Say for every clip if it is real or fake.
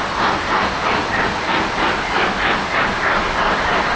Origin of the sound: real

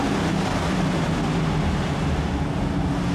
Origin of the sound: real